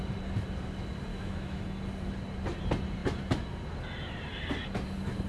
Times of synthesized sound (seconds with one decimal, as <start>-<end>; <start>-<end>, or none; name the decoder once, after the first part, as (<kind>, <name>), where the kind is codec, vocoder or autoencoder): 1.1-1.6 (autoencoder, DAC-VAE)